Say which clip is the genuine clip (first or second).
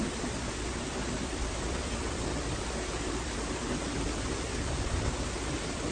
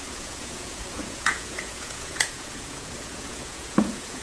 first